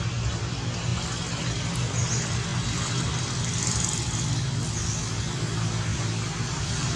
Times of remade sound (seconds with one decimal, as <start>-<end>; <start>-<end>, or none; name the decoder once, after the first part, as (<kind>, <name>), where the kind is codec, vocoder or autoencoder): none